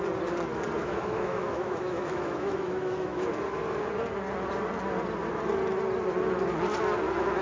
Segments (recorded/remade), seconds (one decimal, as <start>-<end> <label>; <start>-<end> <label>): 0.0-0.8 recorded; 0.8-3.4 remade; 3.4-7.4 recorded